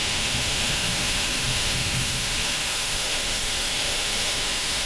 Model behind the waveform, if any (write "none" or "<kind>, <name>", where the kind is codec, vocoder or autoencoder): autoencoder, DAC-VAE